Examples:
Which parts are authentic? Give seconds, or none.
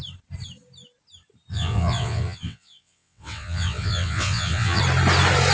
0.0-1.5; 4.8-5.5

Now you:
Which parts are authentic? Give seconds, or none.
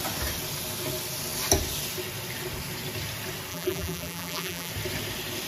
0.0-3.5; 4.7-5.5